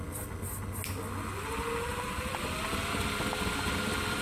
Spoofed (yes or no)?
no